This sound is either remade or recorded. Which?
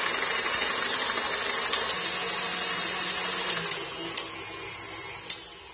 recorded